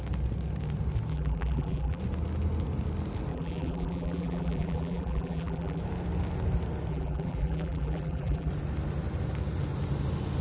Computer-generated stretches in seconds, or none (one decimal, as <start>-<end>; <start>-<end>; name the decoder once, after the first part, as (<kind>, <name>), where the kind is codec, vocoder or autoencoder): 1.1-2.0 (vocoder, BigVGAN v2); 3.3-5.8; 6.9-8.5